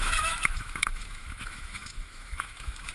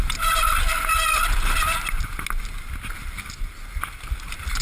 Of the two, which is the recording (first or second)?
second